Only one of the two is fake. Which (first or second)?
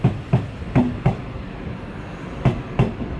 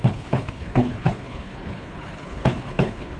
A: second